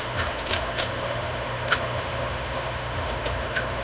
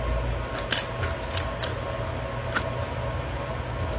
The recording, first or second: second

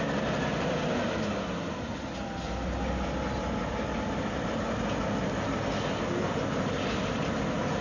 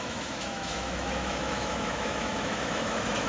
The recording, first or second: first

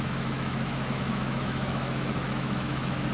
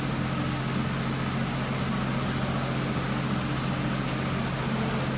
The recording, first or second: second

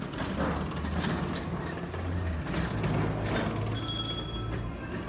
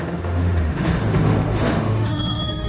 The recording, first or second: first